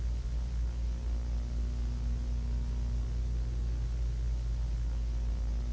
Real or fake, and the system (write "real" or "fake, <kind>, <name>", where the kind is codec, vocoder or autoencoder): real